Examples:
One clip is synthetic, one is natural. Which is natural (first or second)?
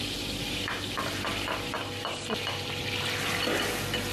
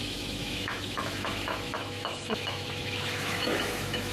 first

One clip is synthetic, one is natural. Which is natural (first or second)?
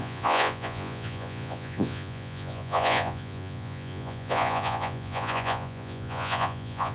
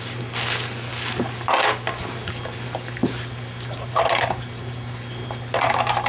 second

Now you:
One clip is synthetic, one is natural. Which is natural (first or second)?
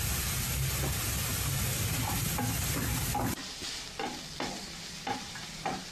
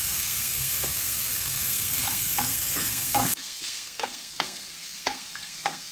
first